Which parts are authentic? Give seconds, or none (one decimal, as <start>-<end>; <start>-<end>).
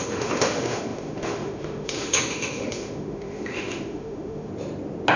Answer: 4.5-5.2